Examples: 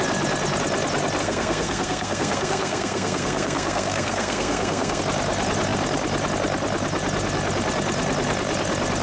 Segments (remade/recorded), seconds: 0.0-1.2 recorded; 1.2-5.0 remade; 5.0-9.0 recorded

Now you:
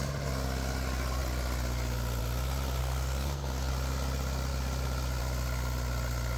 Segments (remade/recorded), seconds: 0.0-2.8 recorded; 2.8-3.7 remade; 3.7-6.4 recorded

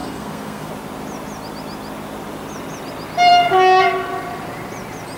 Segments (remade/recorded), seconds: 0.0-0.7 remade; 0.7-5.2 recorded